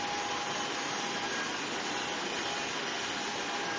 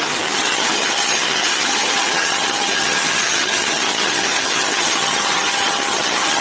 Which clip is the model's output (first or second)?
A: second